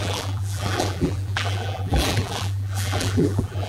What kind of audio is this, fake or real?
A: fake